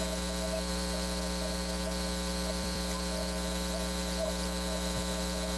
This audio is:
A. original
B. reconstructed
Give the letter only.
B